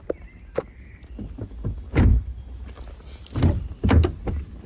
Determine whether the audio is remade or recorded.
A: recorded